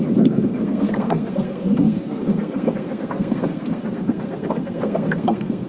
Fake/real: fake